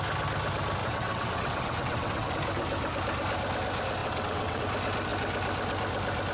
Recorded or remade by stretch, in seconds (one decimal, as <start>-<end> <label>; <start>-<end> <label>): 0.0-0.8 recorded; 0.8-2.3 remade; 2.3-4.0 recorded; 4.0-4.6 remade; 4.6-6.3 recorded